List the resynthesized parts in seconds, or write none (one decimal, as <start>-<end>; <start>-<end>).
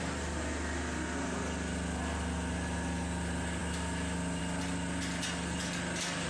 none